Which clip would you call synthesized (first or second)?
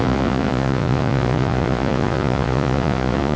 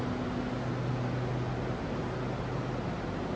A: first